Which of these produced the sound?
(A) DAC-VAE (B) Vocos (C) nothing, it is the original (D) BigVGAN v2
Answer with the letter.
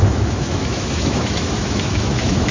A